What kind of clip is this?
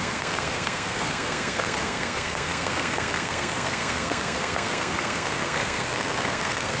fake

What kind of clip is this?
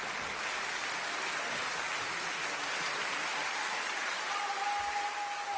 real